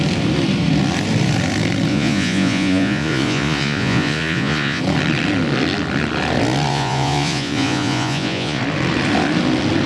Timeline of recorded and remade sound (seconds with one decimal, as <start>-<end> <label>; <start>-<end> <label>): 0.0-1.9 recorded; 1.9-4.8 remade; 4.8-6.7 recorded; 6.7-8.6 remade; 8.6-9.9 recorded